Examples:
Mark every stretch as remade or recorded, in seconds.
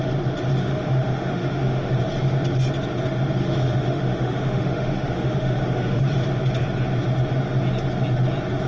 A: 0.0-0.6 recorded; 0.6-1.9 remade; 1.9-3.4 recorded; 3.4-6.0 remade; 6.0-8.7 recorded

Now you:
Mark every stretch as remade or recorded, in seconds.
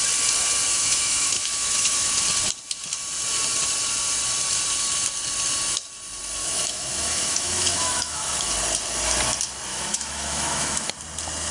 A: 0.0-0.7 recorded; 0.7-2.2 remade; 2.2-6.4 recorded; 6.4-8.5 remade; 8.5-9.7 recorded; 9.7-10.9 remade; 10.9-11.5 recorded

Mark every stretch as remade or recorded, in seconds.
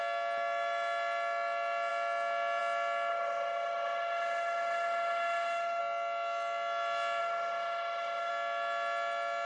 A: 0.0-3.1 recorded; 3.1-5.8 remade; 5.8-7.2 recorded; 7.2-8.3 remade; 8.3-9.5 recorded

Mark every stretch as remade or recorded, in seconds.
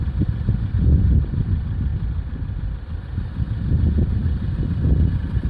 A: 0.0-5.5 recorded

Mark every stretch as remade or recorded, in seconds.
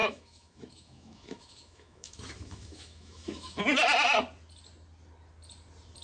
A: 0.0-3.6 remade; 3.6-6.0 recorded